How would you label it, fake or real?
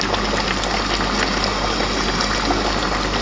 real